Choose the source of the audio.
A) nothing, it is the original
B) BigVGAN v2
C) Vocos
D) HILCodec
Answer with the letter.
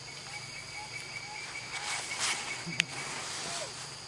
A